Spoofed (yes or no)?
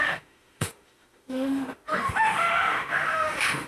yes